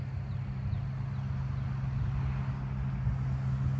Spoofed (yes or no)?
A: no